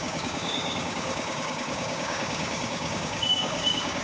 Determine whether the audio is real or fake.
fake